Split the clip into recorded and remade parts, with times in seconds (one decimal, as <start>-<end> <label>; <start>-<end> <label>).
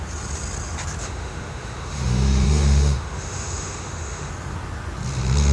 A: 0.0-1.0 recorded; 1.0-4.3 remade; 4.3-5.5 recorded